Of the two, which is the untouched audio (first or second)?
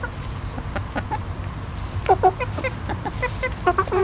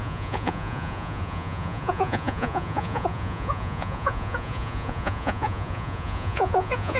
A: first